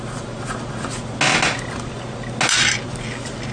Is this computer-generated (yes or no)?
no